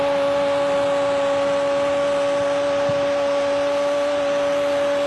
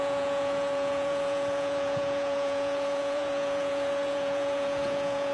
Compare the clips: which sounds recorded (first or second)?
first